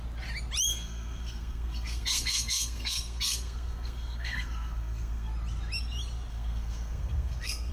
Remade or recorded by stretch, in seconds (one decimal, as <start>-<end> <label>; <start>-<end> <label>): 0.0-0.7 recorded; 0.7-5.3 remade; 5.3-6.3 recorded; 6.3-7.7 remade